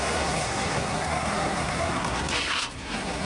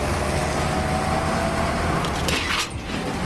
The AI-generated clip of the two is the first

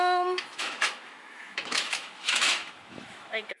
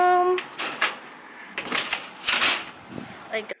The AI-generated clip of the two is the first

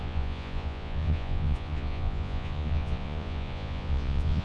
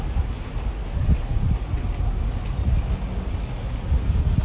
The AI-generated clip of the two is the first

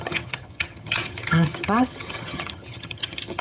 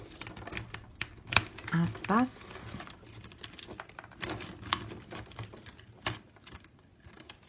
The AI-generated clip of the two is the first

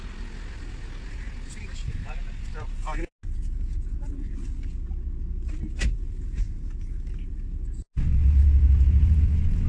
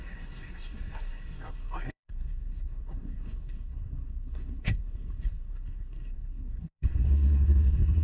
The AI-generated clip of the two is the second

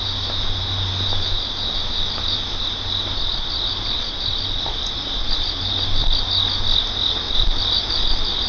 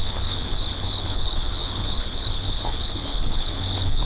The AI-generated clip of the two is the second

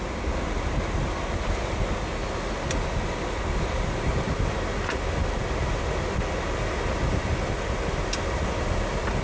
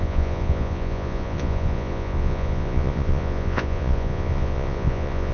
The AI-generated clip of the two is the second